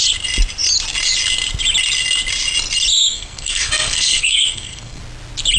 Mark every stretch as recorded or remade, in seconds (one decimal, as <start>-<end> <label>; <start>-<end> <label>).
0.0-2.9 recorded; 2.9-5.0 remade; 5.0-5.6 recorded